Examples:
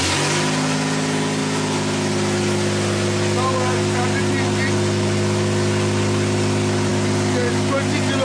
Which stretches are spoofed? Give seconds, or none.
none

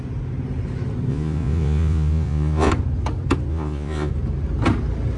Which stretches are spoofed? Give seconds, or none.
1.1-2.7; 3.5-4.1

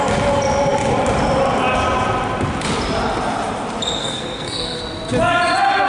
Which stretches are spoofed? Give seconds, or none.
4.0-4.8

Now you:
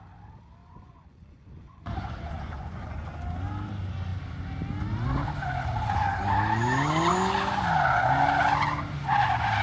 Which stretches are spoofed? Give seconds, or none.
0.6-3.1

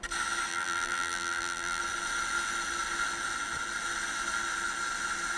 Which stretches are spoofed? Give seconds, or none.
0.5-1.8

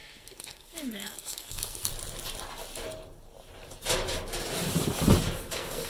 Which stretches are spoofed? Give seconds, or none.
0.0-1.9; 5.4-5.9

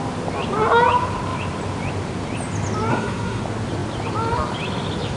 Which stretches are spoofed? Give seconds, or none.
2.9-3.4